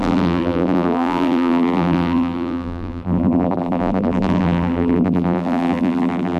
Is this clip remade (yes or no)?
yes